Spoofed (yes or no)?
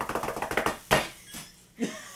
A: no